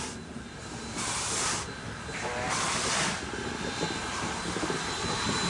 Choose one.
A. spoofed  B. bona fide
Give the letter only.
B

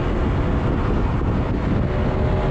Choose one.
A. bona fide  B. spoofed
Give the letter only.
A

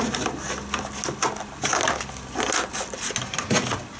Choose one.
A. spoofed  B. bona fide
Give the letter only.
B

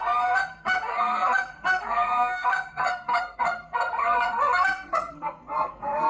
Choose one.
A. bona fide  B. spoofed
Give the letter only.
B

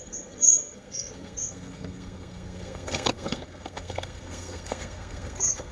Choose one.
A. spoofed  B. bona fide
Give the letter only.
A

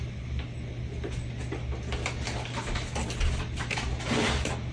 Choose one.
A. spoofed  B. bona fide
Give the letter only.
B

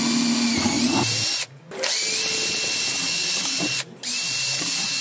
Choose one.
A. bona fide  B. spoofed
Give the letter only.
A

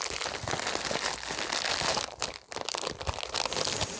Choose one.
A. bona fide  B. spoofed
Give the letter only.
A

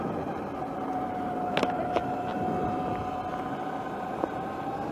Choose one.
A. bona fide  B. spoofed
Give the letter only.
A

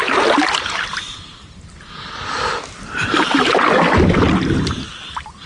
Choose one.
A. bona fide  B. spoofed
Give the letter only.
A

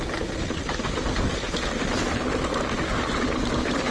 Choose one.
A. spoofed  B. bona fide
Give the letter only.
B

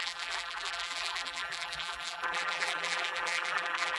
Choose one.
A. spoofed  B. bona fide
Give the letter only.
A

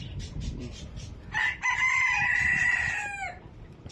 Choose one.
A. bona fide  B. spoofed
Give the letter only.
A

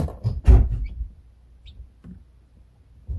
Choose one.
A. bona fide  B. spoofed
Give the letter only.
A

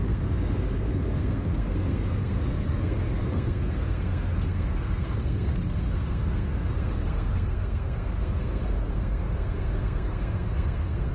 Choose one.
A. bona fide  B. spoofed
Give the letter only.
B